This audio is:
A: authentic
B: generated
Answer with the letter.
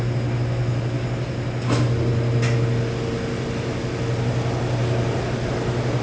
A